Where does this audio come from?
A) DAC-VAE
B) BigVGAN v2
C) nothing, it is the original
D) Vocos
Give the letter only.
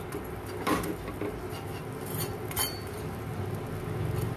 C